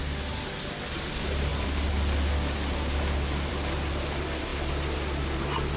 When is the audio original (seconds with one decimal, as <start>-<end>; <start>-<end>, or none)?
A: 0.0-5.8